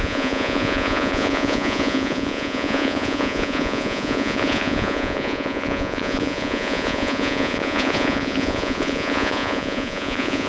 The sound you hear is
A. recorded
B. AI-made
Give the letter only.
B